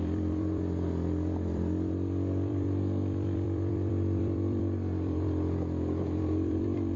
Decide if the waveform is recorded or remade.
remade